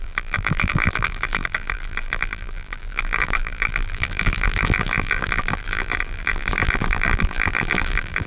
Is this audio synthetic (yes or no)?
yes